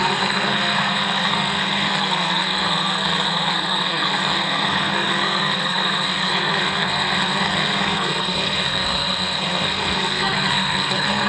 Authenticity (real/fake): fake